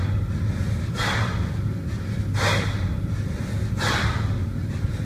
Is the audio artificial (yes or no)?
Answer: no